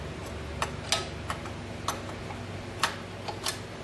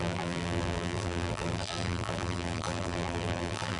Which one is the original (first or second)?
first